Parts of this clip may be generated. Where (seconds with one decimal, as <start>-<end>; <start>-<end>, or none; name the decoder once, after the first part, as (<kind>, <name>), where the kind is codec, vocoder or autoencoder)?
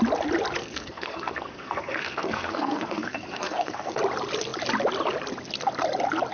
0.6-4.0 (codec, SNAC)